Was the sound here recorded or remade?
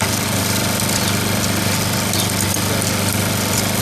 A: recorded